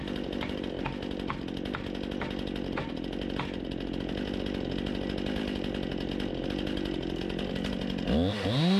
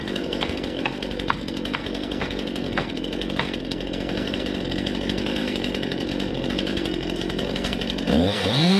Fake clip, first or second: second